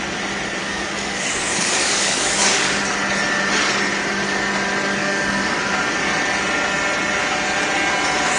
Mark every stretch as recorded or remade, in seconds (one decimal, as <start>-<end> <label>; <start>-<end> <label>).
0.0-0.6 recorded; 0.6-2.8 remade; 2.8-5.0 recorded; 5.0-5.6 remade; 5.6-8.4 recorded